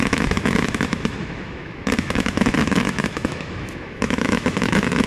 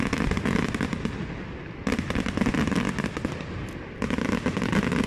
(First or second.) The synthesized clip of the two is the first